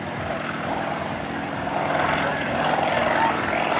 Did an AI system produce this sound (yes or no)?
no